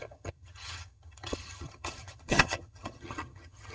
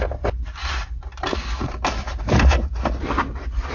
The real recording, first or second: second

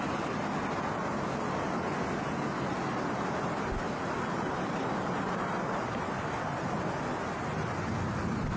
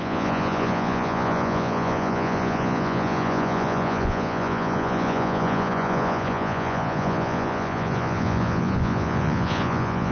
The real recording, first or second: first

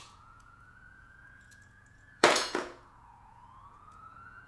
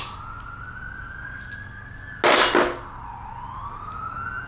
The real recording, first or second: second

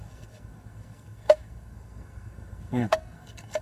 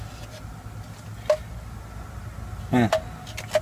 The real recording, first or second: second